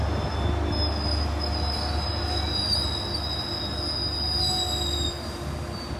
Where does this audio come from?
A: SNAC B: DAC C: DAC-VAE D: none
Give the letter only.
D